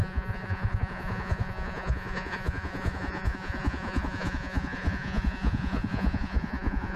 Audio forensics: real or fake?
fake